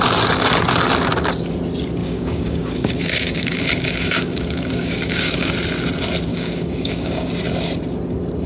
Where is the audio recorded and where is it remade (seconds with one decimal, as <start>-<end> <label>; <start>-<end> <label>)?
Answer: 0.0-2.0 recorded; 2.0-5.5 remade; 5.5-6.3 recorded; 6.3-7.3 remade; 7.3-8.5 recorded